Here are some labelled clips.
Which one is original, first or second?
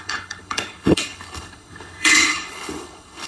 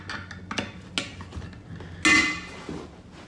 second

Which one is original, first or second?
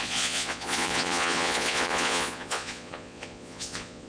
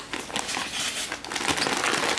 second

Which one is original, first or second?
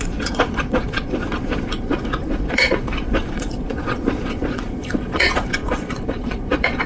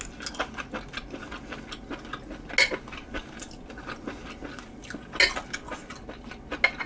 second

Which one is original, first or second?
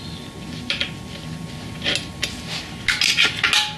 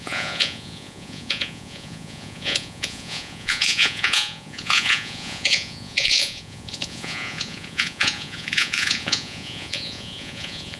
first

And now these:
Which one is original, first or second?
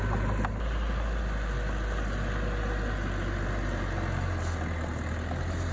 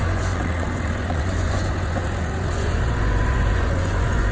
first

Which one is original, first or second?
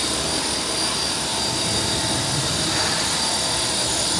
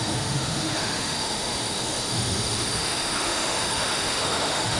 first